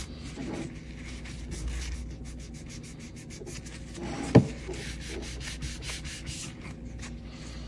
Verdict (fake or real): real